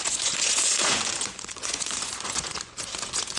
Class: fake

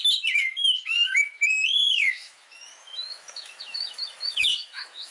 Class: fake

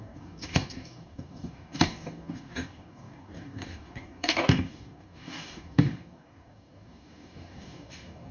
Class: fake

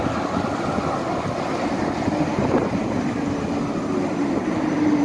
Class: real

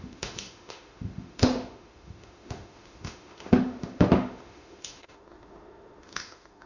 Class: fake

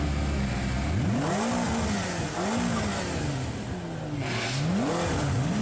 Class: real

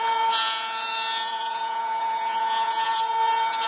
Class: fake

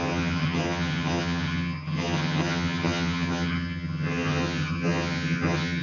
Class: fake